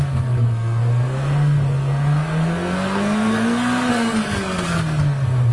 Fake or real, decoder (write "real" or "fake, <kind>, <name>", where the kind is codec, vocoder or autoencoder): fake, codec, SNAC